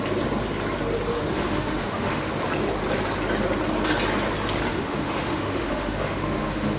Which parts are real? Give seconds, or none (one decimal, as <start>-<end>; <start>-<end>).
0.0-1.1; 2.3-4.7